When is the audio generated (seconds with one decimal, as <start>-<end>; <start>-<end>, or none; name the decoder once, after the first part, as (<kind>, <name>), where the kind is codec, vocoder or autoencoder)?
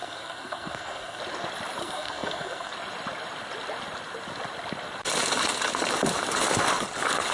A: 0.0-1.2 (codec, SNAC); 1.8-2.7